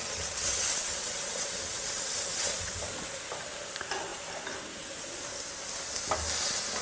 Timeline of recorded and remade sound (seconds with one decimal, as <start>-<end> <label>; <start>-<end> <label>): 0.0-2.8 remade; 2.8-6.8 recorded